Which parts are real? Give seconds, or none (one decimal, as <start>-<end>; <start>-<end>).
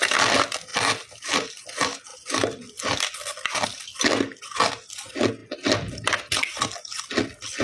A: 0.0-0.7; 1.5-2.1; 3.8-7.6